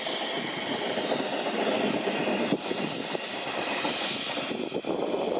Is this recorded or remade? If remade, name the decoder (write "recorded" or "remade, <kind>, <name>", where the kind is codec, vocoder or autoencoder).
recorded